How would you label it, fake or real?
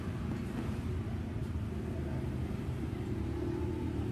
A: real